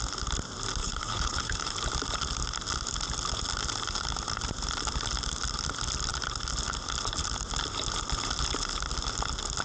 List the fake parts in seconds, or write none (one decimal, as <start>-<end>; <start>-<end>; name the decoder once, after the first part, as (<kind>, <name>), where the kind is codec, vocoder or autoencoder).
0.8-1.7 (codec, HILCodec)